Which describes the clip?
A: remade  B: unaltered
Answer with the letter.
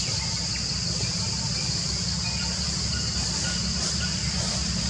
B